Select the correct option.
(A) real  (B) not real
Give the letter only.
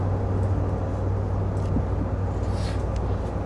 A